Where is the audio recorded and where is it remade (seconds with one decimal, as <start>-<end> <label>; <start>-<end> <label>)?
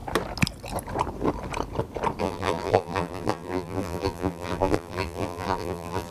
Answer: 0.0-2.2 recorded; 2.2-6.1 remade